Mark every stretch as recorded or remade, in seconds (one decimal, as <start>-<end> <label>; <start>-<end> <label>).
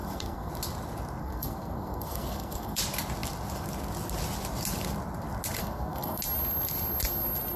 0.0-0.5 remade; 0.5-1.2 recorded; 1.2-2.8 remade; 2.8-5.6 recorded; 5.6-6.2 remade; 6.2-7.6 recorded